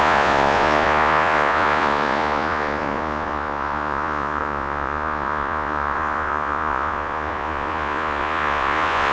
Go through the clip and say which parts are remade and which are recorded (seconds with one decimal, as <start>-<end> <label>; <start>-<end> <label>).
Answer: 0.0-9.1 remade